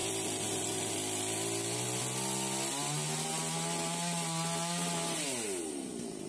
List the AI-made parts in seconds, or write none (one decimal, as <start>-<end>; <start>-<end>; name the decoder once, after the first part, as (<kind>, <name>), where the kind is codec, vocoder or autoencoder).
none

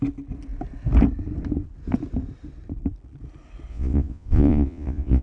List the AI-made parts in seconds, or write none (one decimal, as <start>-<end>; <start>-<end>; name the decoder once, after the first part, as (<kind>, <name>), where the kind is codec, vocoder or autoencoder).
3.7-5.2 (vocoder, Vocos)